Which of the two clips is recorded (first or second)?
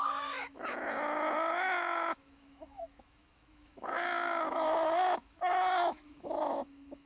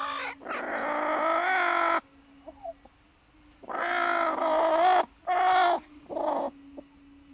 second